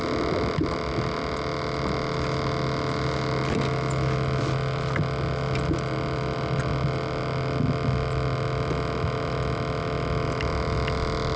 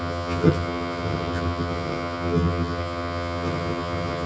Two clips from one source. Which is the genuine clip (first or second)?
first